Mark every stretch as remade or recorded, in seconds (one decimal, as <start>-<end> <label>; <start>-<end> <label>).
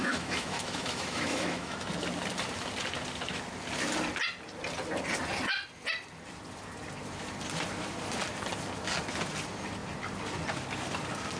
0.0-1.9 remade; 1.9-11.4 recorded